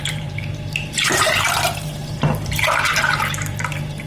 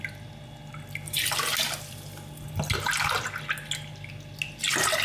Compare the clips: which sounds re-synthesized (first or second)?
first